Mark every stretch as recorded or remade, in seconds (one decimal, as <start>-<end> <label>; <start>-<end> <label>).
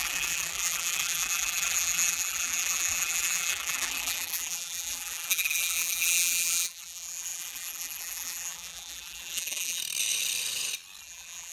0.0-9.8 remade; 9.8-11.0 recorded; 11.0-11.5 remade